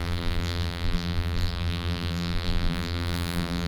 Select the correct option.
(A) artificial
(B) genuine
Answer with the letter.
A